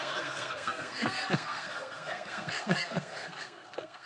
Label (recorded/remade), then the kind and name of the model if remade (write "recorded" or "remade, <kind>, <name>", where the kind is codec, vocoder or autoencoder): remade, codec, SNAC